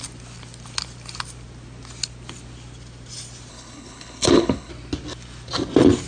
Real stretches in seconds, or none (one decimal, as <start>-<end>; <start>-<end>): 0.0-3.5; 4.7-6.1